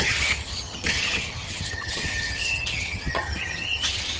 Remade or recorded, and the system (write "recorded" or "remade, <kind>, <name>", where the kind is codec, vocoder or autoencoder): remade, vocoder, HiFi-GAN